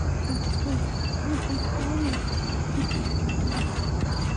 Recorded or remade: recorded